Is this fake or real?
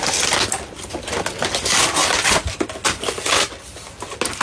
real